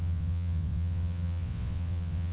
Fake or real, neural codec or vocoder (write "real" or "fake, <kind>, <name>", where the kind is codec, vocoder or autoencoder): fake, vocoder, WaveNeXt